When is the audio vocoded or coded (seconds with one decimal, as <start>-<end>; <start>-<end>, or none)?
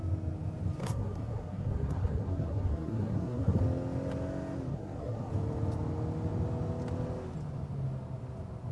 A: 0.8-3.6; 4.7-5.3